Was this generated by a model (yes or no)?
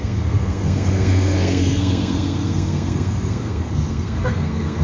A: yes